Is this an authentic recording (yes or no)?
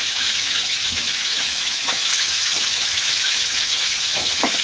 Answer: no